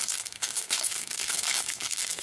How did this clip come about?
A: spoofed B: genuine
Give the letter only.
A